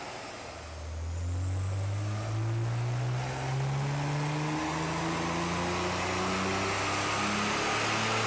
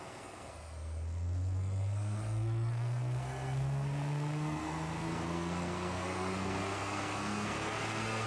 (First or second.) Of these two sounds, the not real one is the second